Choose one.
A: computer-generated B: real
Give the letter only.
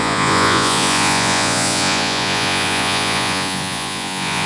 A